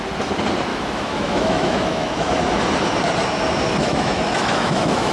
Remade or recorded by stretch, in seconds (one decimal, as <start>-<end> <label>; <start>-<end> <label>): 0.0-0.7 recorded; 0.7-2.3 remade; 2.3-3.8 recorded; 3.8-5.1 remade